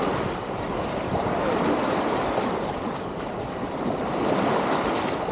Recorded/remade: remade